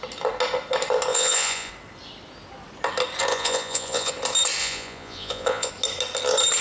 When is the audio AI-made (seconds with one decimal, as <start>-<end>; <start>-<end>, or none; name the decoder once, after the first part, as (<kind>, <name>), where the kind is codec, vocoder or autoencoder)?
1.1-1.7 (vocoder, Vocos); 3.3-4.1; 4.6-5.7